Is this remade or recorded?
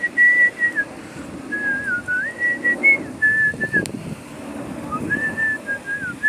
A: recorded